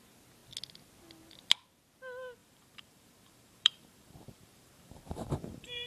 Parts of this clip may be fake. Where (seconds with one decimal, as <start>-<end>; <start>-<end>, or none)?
2.4-5.9